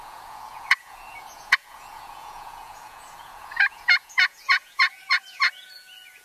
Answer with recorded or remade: remade